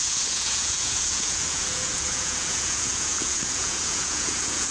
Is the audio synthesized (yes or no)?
yes